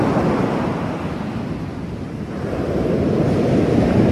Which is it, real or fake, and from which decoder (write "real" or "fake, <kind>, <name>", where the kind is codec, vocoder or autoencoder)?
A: real